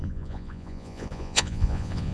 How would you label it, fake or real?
fake